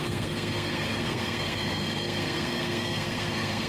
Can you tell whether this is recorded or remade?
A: remade